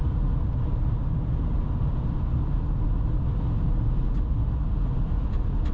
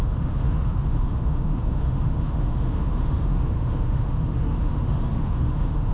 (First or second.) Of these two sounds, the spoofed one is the second